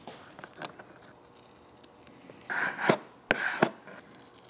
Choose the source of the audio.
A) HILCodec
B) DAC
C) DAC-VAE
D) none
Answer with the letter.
D